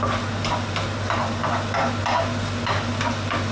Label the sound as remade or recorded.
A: recorded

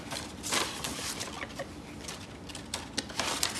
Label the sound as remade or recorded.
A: recorded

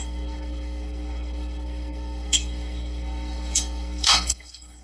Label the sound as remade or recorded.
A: remade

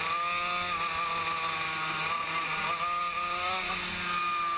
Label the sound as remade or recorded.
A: recorded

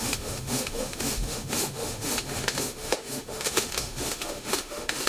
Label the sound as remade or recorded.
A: remade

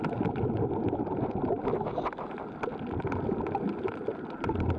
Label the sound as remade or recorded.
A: recorded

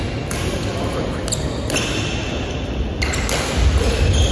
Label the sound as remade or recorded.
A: recorded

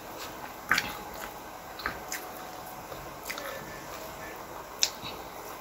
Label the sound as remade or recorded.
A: recorded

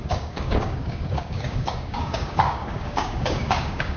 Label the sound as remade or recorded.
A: remade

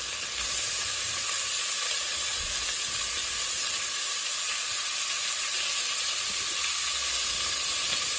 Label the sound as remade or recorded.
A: recorded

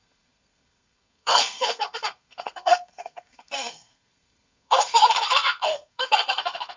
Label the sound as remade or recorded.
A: remade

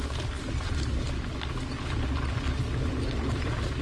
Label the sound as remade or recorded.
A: recorded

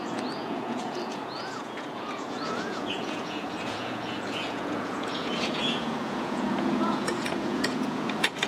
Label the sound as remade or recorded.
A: remade